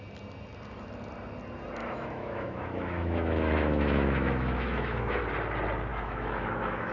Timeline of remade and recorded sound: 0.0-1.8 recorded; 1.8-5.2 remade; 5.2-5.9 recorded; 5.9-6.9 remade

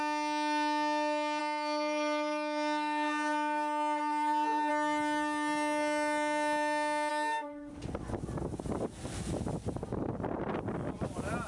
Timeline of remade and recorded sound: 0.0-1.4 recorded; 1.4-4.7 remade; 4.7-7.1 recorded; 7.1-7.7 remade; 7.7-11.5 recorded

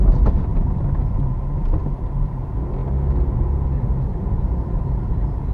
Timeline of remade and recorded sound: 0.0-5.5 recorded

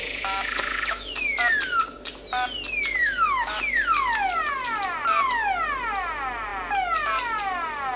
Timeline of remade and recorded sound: 0.0-1.1 remade; 1.1-3.0 recorded; 3.0-3.6 remade; 3.6-8.0 recorded

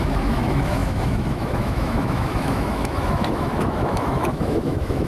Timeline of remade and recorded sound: 0.0-5.1 remade